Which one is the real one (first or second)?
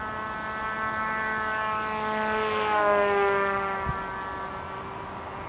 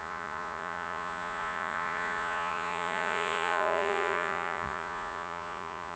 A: first